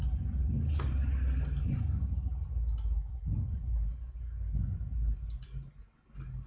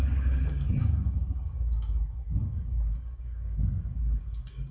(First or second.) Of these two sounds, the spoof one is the second